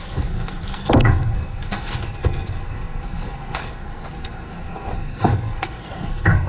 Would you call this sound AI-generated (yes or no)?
yes